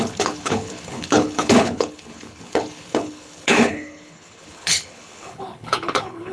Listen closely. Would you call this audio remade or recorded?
remade